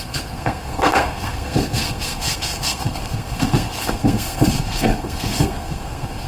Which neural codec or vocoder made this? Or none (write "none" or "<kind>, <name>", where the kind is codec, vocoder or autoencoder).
codec, SNAC